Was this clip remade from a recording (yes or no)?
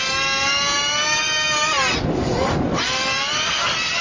no